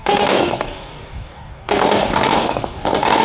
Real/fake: fake